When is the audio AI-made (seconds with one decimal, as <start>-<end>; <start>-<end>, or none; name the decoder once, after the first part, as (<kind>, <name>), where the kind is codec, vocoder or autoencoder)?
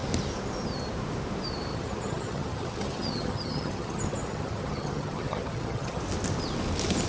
1.7-6.0 (vocoder, HiFi-GAN)